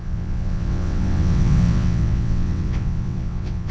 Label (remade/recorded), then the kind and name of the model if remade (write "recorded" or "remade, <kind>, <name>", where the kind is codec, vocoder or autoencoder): remade, vocoder, WaveNeXt